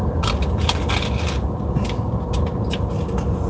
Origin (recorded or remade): recorded